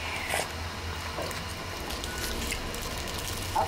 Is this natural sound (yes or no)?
yes